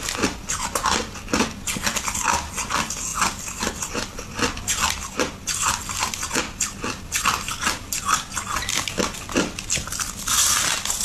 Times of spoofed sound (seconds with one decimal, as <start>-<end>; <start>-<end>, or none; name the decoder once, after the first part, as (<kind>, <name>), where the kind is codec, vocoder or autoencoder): none